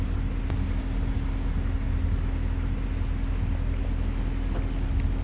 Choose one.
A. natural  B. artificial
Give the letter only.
A